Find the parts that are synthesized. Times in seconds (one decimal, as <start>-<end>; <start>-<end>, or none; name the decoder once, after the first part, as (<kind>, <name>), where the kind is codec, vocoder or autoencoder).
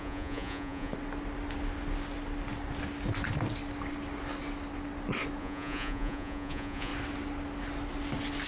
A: 0.0-0.9 (vocoder, Vocos); 5.4-6.9